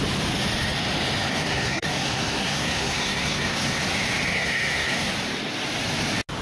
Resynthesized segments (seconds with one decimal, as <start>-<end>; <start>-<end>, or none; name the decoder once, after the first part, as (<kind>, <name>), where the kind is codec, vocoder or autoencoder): 1.3-3.8 (codec, SNAC); 4.3-5.1